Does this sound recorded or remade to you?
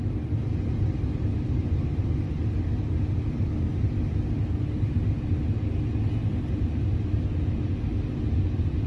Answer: recorded